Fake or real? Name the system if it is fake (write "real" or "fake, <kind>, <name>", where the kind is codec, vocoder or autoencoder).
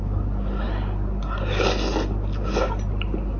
real